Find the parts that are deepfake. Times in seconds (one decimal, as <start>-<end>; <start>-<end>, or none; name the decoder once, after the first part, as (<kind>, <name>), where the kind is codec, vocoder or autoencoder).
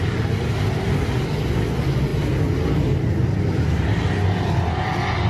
none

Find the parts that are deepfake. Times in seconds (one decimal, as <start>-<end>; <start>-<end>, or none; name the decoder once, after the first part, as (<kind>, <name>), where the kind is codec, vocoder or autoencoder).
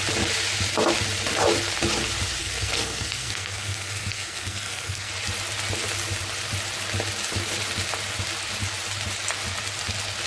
2.4-5.1 (codec, SNAC)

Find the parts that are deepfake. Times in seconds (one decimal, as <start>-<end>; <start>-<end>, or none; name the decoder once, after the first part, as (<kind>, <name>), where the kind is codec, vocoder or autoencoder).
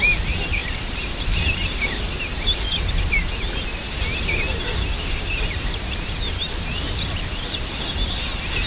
none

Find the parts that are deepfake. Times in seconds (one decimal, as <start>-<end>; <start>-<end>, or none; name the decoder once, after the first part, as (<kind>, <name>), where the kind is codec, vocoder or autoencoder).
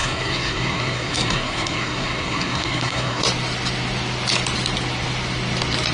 0.0-3.2 (codec, SNAC)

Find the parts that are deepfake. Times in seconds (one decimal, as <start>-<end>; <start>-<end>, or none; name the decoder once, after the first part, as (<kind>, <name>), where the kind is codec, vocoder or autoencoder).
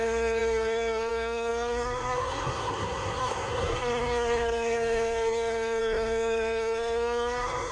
0.0-7.7 (codec, SNAC)